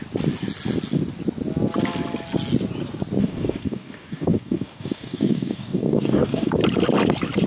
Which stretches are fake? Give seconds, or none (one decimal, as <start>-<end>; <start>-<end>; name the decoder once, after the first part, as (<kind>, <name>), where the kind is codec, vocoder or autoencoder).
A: 3.2-6.5 (codec, DAC)